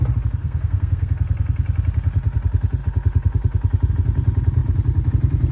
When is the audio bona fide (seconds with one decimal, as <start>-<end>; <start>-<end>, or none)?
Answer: 0.0-0.4; 1.1-5.5